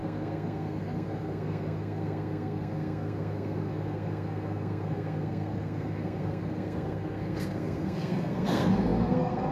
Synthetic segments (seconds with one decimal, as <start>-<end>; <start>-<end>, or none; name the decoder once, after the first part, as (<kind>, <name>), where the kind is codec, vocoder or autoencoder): 0.0-9.5 (codec, SNAC)